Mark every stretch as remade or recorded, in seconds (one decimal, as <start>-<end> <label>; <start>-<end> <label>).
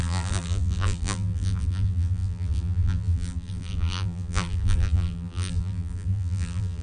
0.0-6.8 remade